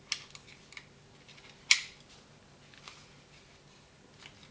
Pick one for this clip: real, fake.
real